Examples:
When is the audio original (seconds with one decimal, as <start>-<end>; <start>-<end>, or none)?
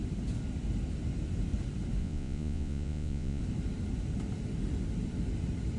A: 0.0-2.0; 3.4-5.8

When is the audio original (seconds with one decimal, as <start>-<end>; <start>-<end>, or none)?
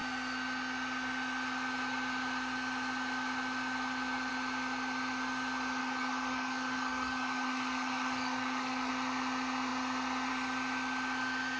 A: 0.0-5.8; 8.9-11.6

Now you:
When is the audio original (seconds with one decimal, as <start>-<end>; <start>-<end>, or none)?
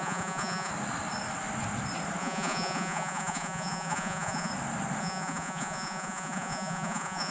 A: 0.7-2.2; 4.5-5.0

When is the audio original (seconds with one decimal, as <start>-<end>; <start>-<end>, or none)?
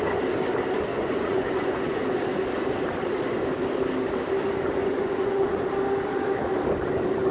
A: 0.0-0.9; 2.0-4.8; 5.7-7.3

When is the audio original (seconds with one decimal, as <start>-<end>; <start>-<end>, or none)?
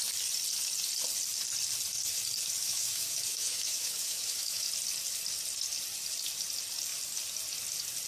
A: 0.0-2.6; 4.7-8.1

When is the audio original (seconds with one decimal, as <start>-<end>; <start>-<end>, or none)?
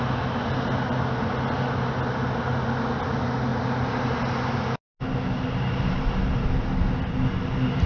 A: 0.0-7.9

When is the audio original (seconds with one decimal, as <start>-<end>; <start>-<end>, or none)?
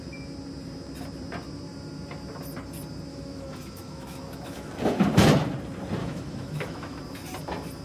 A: 0.0-3.1; 4.7-6.0; 7.0-7.8